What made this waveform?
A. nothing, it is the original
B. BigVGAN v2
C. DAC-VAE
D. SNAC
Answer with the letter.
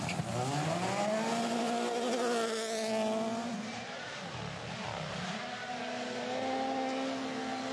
A